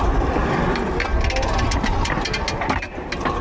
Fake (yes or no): no